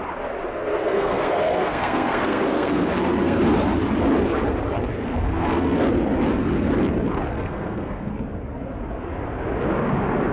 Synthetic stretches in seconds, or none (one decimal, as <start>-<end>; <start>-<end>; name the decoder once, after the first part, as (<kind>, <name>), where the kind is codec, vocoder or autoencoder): 0.5-3.4 (codec, SNAC); 5.0-5.8; 7.3-8.1